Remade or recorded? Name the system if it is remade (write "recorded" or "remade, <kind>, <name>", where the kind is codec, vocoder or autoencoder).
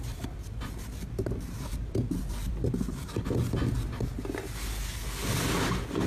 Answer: recorded